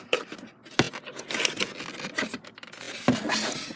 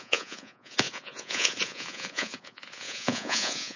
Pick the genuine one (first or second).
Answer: first